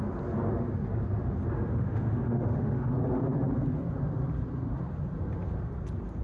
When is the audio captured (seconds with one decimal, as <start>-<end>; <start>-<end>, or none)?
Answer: 0.0-1.7; 2.9-6.2